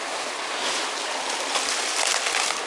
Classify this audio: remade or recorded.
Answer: recorded